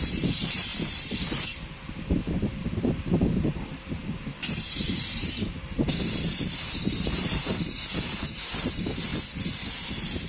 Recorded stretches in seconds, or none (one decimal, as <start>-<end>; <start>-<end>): 9.1-10.3